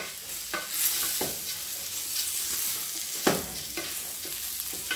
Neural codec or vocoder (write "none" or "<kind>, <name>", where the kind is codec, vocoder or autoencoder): none